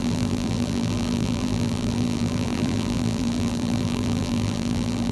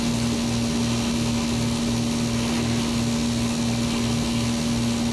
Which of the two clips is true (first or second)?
second